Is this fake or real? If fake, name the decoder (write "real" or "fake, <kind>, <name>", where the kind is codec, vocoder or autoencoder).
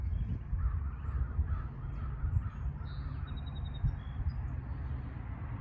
real